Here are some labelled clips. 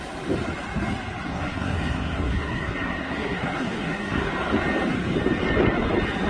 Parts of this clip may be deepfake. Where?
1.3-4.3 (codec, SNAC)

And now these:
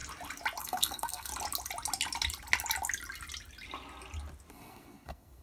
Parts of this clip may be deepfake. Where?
0.6-1.3 (codec, SNAC); 4.5-5.4